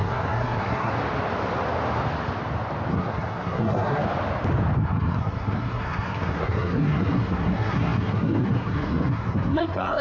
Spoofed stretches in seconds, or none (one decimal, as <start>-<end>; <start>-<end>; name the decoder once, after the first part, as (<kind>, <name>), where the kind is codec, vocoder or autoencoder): 0.0-0.9 (codec, SNAC); 2.9-4.0; 4.8-10.0